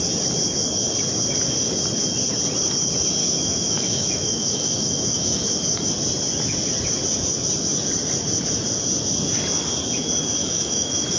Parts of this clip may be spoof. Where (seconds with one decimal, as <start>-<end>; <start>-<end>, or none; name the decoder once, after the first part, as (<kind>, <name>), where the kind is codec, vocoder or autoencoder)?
3.2-5.9 (autoencoder, DAC-VAE); 10.4-11.2